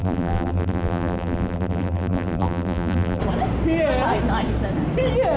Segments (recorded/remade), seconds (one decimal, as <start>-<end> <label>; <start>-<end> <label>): 0.0-3.2 remade; 3.2-5.4 recorded